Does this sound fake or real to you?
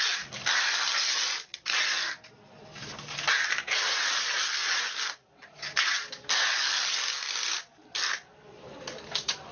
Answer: real